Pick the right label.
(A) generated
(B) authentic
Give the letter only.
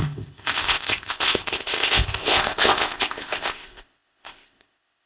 A